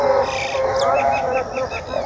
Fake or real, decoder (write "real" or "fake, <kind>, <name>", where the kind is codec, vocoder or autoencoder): real